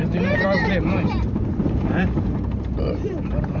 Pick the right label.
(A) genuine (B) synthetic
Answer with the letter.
B